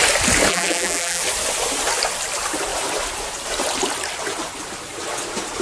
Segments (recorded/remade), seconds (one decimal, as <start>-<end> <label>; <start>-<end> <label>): 0.0-0.5 recorded; 0.5-1.2 remade; 1.2-5.6 recorded